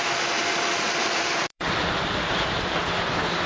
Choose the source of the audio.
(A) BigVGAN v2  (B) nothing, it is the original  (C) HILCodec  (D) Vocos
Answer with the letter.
A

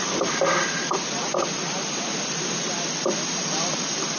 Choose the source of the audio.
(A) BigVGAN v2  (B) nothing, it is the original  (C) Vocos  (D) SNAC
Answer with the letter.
B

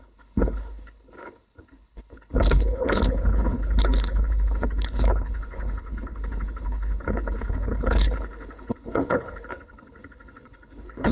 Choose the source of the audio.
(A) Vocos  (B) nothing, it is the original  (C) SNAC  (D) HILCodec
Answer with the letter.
D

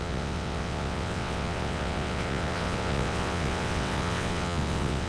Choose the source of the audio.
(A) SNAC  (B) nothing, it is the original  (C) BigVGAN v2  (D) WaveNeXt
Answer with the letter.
D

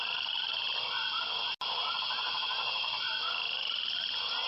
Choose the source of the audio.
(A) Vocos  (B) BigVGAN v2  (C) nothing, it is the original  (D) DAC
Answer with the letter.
C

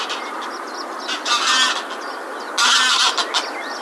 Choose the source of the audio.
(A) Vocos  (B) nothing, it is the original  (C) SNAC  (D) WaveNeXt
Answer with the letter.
B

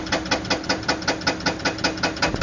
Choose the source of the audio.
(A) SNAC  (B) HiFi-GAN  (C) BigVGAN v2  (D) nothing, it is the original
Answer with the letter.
D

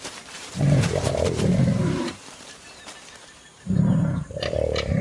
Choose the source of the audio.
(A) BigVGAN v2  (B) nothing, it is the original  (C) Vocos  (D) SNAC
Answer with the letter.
A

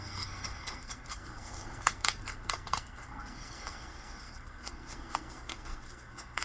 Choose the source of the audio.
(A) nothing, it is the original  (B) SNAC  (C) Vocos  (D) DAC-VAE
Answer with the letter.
B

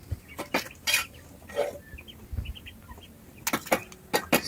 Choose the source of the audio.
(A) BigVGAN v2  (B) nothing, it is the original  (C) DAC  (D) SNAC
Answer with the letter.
B